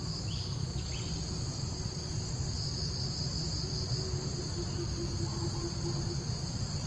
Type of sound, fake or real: real